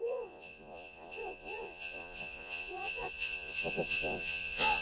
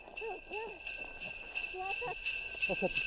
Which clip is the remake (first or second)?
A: first